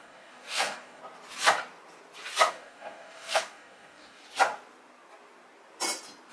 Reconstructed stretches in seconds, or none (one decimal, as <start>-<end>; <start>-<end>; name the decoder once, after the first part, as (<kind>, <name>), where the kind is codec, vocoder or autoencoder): 0.0-1.0 (codec, DAC); 2.5-4.2